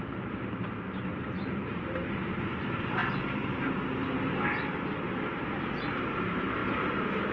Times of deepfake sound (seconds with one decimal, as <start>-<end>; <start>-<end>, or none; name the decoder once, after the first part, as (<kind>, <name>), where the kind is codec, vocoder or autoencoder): 0.0-3.0 (vocoder, BigVGAN v2); 5.6-6.6